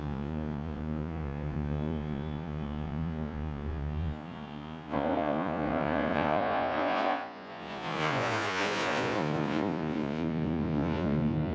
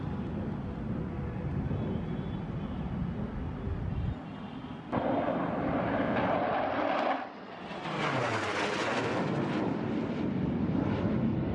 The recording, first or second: second